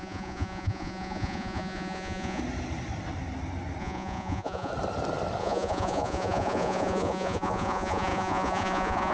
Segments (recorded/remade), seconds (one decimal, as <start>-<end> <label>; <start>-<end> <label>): 0.0-2.4 remade; 2.4-3.8 recorded; 3.8-4.7 remade; 4.7-5.4 recorded; 5.4-9.1 remade